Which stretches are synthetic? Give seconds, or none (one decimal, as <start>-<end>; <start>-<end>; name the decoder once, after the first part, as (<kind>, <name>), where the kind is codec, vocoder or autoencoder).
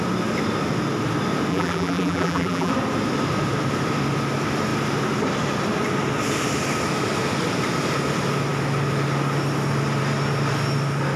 1.5-2.7 (vocoder, BigVGAN v2)